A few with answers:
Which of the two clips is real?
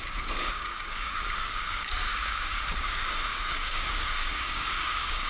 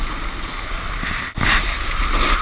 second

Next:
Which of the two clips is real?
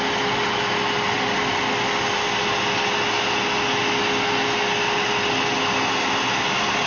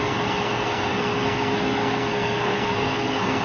first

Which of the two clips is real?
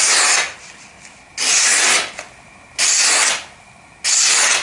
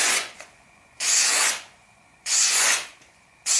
first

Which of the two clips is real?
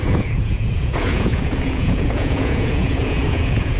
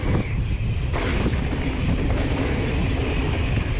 second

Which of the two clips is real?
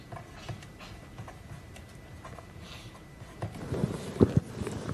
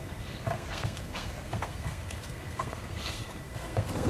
first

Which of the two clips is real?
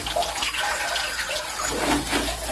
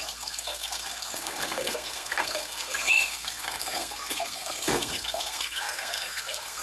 first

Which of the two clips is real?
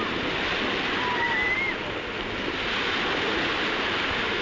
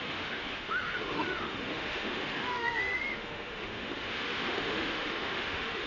first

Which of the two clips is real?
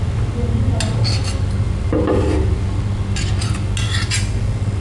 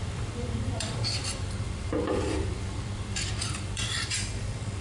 first